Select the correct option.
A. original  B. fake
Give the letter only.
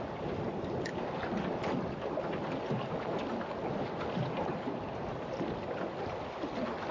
A